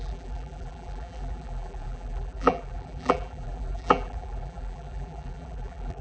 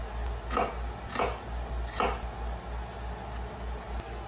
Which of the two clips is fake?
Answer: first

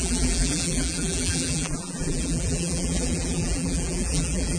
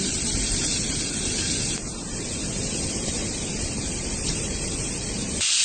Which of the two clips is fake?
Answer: first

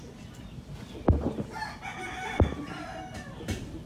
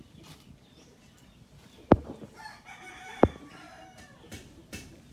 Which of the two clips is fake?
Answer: second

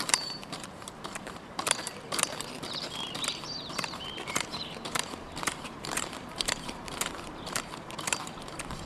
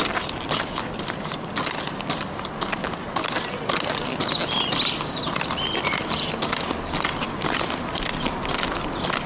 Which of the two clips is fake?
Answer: first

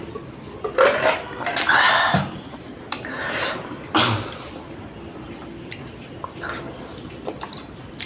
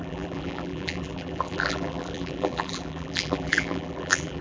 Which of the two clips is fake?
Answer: second